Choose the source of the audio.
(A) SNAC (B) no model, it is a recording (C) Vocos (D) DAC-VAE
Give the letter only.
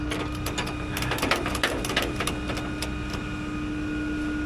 B